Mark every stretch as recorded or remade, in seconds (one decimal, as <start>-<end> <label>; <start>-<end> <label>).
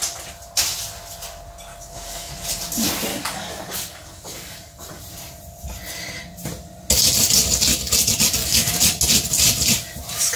0.0-1.7 recorded; 1.7-2.3 remade; 2.3-3.1 recorded; 3.1-5.0 remade; 5.0-8.4 recorded; 8.4-9.0 remade; 9.0-10.4 recorded